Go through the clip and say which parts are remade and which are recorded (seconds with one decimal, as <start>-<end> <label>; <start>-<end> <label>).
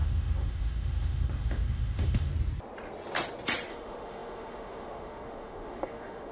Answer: 0.0-2.3 remade; 2.3-3.7 recorded; 3.7-6.3 remade